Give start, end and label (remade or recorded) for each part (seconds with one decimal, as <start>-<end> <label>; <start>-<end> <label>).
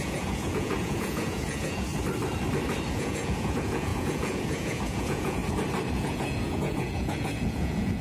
0.0-1.9 remade; 1.9-2.9 recorded; 2.9-5.4 remade; 5.4-5.9 recorded; 5.9-8.0 remade